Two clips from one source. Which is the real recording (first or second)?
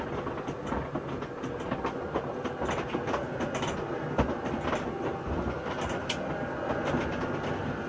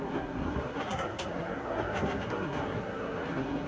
first